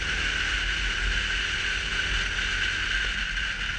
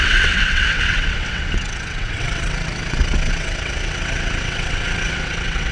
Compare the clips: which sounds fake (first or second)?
second